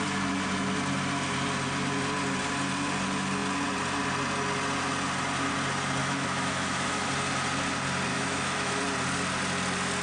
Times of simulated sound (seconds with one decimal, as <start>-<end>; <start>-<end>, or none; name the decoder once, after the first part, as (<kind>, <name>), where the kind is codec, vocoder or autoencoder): 6.0-7.1 (autoencoder, DAC-VAE); 8.1-8.8